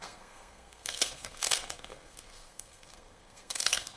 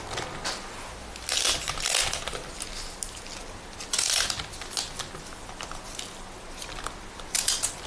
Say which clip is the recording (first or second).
second